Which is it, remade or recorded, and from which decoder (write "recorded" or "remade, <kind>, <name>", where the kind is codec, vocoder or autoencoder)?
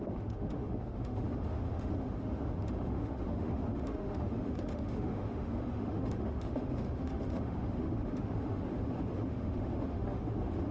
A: remade, autoencoder, DAC-VAE